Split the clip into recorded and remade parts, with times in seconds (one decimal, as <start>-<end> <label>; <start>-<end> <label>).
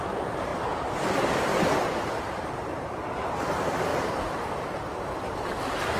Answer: 0.0-1.5 remade; 1.5-2.1 recorded; 2.1-6.0 remade